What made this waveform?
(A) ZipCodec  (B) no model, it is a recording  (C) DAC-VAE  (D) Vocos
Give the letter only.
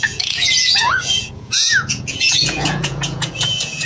D